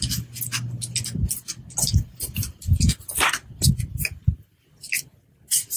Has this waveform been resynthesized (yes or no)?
no